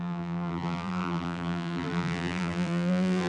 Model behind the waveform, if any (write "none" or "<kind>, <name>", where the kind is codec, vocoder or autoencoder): vocoder, BigVGAN v2